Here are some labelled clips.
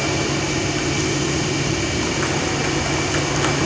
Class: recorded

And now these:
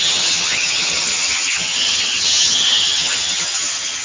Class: remade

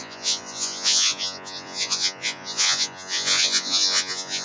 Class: remade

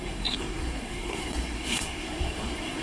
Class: remade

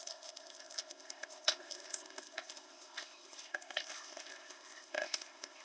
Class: remade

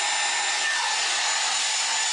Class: recorded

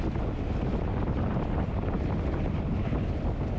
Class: recorded